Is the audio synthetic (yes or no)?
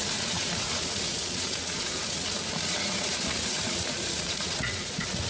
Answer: yes